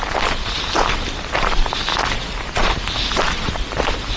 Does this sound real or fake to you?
real